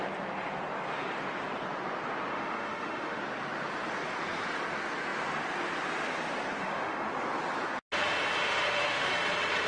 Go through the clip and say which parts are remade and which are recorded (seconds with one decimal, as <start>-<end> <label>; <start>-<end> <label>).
0.0-2.3 recorded; 2.3-3.2 remade; 3.2-6.6 recorded; 6.6-7.1 remade; 7.1-8.4 recorded; 8.4-9.1 remade; 9.1-9.7 recorded

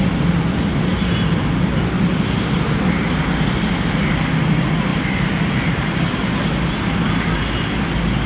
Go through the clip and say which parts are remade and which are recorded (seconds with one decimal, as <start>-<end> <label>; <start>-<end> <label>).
0.0-8.3 recorded

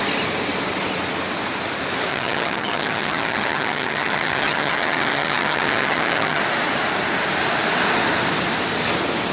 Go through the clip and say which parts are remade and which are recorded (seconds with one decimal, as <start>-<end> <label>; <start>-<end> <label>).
0.0-2.1 recorded; 2.1-6.4 remade; 6.4-9.3 recorded

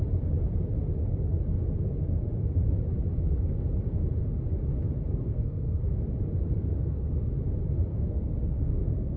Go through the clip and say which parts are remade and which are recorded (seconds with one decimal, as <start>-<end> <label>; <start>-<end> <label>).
0.0-5.3 recorded; 5.3-5.9 remade; 5.9-6.7 recorded; 6.7-7.3 remade; 7.3-7.9 recorded; 7.9-9.2 remade

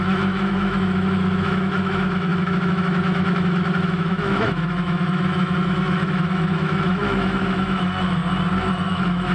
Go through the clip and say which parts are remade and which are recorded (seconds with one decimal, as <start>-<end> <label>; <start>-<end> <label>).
0.0-8.2 remade; 8.2-8.7 recorded; 8.7-9.3 remade

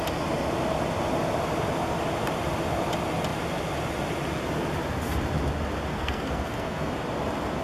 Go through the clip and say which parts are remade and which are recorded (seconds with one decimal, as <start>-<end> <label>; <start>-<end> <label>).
0.0-5.9 recorded; 5.9-6.9 remade; 6.9-7.6 recorded

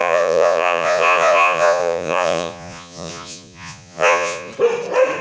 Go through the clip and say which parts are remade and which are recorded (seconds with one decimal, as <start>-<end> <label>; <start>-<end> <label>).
0.0-4.5 remade; 4.5-5.2 recorded

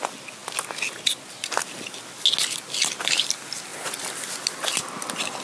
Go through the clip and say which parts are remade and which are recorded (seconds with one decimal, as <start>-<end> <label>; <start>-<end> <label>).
0.0-5.4 recorded